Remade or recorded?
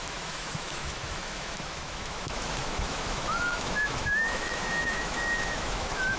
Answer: remade